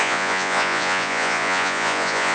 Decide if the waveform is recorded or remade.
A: remade